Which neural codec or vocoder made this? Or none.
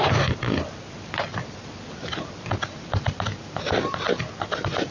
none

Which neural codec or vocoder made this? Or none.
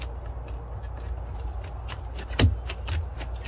none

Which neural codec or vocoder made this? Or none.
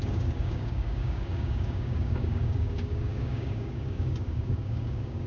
codec, DAC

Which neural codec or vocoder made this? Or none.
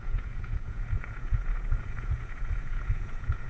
vocoder, Vocos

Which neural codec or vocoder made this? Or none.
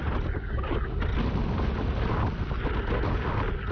none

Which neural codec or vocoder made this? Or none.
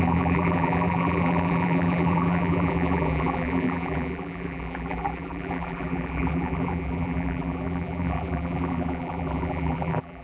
vocoder, BigVGAN v2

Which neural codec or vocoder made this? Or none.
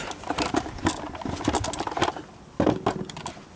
none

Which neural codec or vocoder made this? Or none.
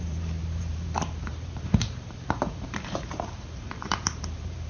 vocoder, BigVGAN v2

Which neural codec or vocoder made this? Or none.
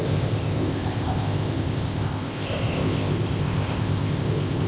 codec, ZipCodec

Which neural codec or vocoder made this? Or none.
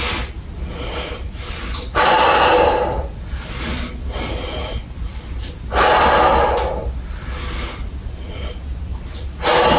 none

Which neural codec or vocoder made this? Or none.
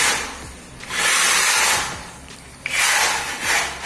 none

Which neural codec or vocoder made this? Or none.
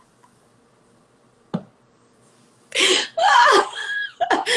none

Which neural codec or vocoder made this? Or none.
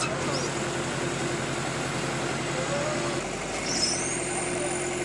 none